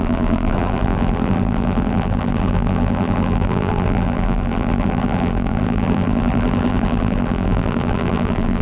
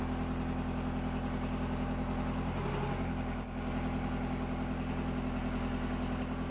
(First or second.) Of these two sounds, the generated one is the first